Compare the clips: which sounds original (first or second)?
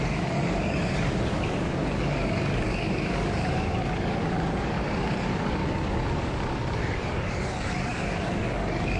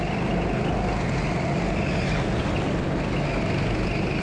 second